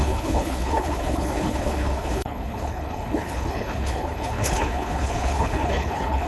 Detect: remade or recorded remade